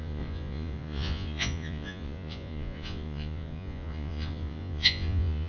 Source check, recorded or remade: remade